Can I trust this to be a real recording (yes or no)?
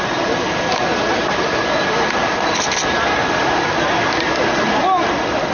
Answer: yes